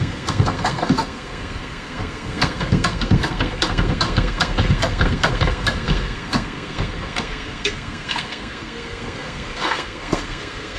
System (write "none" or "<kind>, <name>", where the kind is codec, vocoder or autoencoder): codec, SNAC